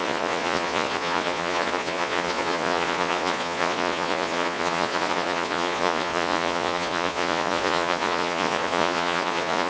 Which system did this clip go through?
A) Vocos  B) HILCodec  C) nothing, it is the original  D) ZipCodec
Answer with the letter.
A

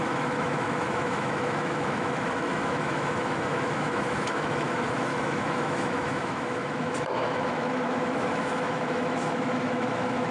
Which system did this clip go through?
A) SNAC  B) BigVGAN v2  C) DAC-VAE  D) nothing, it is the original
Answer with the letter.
C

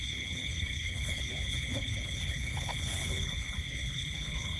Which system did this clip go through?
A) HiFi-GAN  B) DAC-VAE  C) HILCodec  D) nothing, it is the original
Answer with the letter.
C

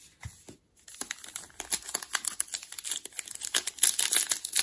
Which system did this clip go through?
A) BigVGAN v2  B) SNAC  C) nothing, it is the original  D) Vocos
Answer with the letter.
C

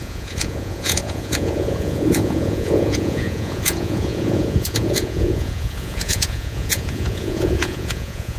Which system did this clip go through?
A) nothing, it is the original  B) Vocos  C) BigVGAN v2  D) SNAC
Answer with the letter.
B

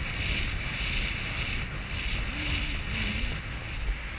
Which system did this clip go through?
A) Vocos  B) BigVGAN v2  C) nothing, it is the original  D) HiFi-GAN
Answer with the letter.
C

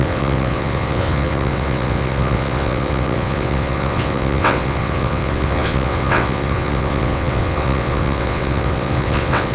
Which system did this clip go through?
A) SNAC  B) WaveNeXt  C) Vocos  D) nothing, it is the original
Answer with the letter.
B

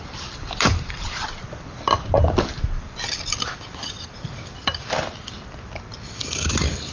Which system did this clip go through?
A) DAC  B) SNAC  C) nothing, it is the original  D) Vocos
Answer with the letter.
C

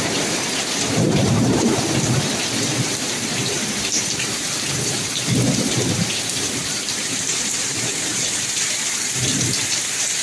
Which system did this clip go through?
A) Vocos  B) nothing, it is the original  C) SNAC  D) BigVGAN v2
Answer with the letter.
D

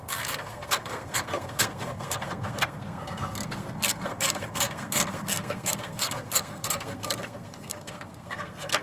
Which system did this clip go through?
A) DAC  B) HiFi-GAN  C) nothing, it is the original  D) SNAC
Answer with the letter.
D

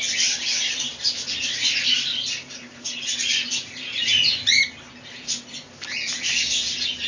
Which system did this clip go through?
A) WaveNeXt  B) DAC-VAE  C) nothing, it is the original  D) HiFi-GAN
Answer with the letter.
C